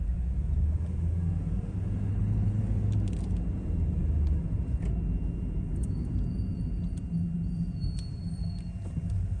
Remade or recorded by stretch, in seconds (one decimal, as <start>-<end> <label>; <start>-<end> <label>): 0.0-2.1 recorded; 2.1-2.6 remade; 2.6-9.4 recorded